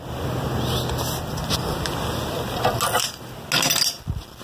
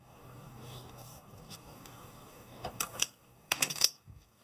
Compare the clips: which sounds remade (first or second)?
second